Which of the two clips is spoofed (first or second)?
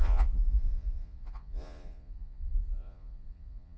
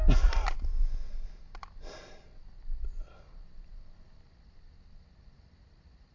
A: first